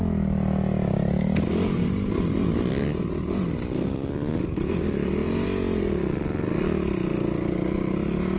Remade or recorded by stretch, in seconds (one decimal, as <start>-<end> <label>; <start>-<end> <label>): 0.0-8.4 recorded